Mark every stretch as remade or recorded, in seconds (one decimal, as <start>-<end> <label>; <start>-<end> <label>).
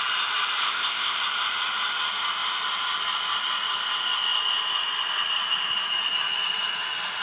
0.0-0.6 recorded; 0.6-1.2 remade; 1.2-7.2 recorded